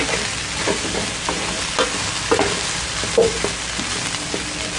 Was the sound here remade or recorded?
recorded